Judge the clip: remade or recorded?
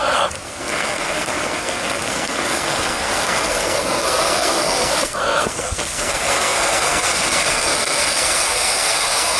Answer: remade